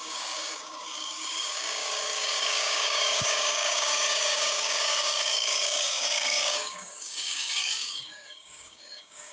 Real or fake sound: fake